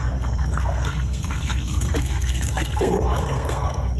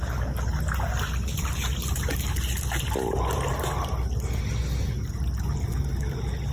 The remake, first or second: first